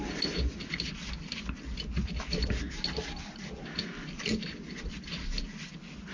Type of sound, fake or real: real